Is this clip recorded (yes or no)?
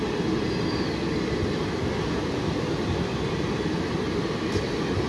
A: yes